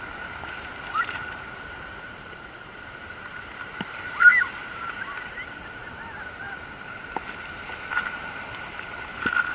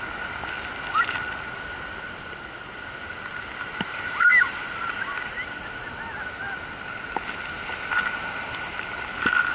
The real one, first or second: second